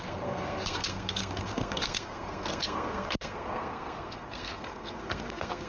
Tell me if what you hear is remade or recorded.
remade